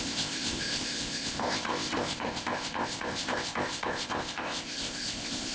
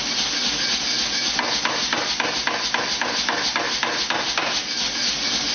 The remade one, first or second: first